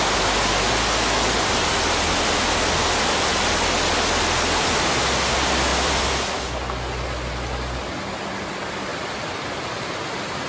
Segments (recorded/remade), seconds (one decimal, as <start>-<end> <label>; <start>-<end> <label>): 0.0-5.7 recorded; 5.7-6.5 remade; 6.5-8.9 recorded; 8.9-10.5 remade